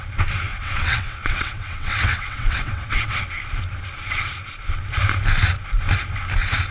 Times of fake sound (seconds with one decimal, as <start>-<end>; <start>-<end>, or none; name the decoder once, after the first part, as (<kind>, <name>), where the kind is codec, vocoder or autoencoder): 0.5-3.2 (vocoder, WaveNeXt)